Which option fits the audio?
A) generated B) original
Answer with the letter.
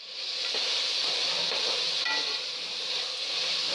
B